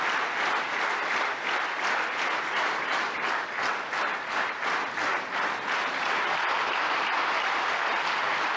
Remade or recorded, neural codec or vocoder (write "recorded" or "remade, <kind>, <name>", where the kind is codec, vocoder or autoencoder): recorded